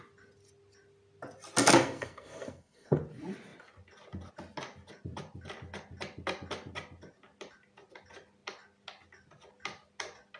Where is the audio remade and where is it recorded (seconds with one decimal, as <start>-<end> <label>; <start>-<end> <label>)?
0.0-1.6 recorded; 1.6-3.0 remade; 3.0-10.4 recorded